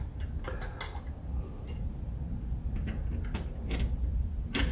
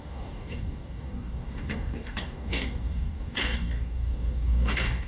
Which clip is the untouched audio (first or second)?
first